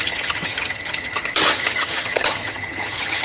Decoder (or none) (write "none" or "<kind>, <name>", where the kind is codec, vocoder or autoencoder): vocoder, HiFi-GAN